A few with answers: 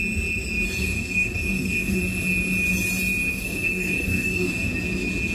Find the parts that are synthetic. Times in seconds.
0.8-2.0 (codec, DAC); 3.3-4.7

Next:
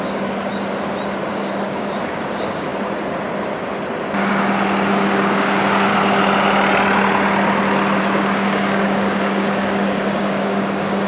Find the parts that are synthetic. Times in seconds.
0.0-0.5 (codec, DAC); 1.3-2.7; 4.9-5.9; 8.0-11.1

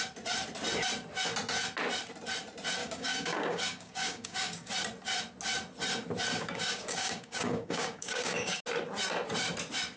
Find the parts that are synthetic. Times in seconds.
2.8-4.7 (codec, DAC); 6.3-8.6

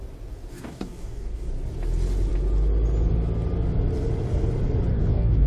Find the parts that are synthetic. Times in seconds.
0.5-1.5 (codec, DAC); 4.9-5.5

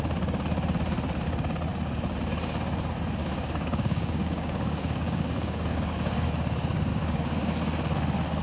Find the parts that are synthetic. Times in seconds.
3.2-6.3 (codec, DAC); 6.9-7.5

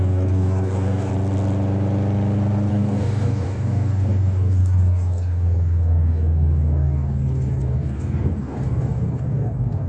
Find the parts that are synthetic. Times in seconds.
0.0-1.1 (codec, DAC); 2.7-9.9

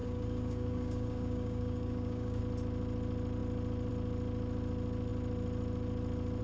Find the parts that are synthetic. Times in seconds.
0.0-2.4 (codec, DAC)